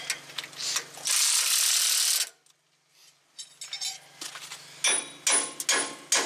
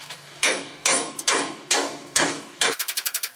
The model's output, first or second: second